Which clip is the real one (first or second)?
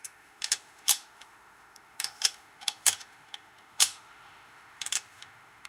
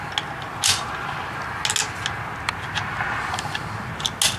second